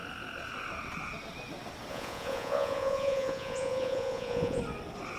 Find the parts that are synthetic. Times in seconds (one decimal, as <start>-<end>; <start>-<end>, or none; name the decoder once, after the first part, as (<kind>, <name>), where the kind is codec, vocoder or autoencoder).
1.9-4.6 (vocoder, Vocos)

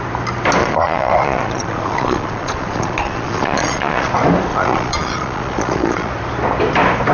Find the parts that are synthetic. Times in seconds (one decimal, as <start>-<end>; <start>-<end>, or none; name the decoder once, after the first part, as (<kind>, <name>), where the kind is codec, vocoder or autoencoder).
0.6-4.1 (vocoder, Vocos); 4.5-6.1

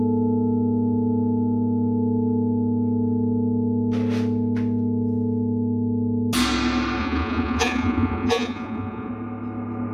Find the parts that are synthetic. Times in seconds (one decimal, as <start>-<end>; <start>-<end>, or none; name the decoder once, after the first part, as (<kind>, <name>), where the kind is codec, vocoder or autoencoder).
7.0-9.1 (vocoder, Vocos)